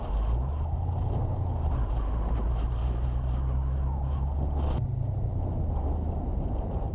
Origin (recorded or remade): recorded